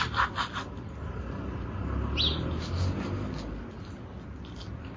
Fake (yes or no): no